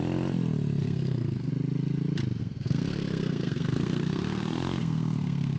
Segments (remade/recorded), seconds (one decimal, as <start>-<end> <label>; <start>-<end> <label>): 0.0-0.8 recorded; 0.8-1.5 remade; 1.5-2.4 recorded; 2.4-5.6 remade